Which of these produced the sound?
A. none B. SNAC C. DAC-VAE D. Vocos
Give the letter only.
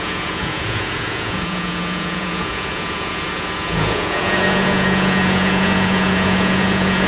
D